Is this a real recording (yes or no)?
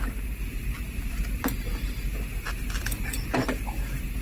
no